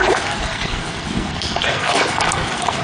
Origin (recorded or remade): remade